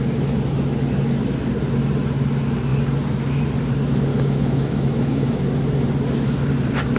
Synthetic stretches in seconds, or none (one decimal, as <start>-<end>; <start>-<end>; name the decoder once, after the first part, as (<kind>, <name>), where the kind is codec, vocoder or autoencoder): 4.1-5.4 (autoencoder, DAC-VAE)